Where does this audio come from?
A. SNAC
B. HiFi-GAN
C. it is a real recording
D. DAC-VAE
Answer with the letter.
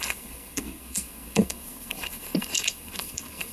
A